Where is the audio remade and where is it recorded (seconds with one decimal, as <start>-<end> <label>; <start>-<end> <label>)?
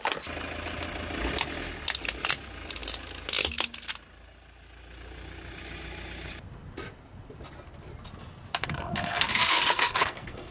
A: 0.0-8.6 recorded; 8.6-10.5 remade